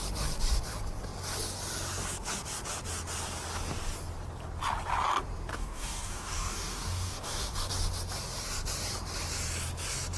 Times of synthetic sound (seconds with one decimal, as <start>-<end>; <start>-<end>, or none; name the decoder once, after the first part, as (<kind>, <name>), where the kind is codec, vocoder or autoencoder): 5.5-7.7 (codec, DAC)